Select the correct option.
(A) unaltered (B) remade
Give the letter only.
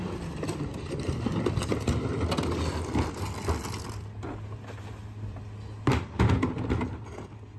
A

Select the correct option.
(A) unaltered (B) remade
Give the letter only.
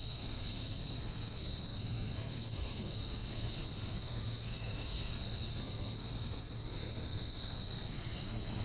B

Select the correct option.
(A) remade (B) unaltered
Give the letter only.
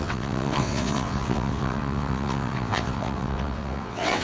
A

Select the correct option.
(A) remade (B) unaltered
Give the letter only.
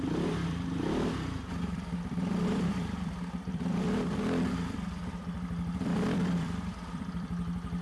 A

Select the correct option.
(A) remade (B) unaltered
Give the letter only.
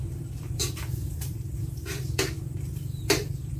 A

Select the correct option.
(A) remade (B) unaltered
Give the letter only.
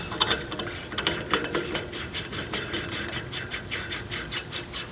B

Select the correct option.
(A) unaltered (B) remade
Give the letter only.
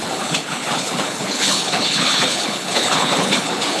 B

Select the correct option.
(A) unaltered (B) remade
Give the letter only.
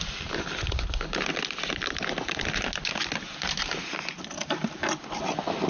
A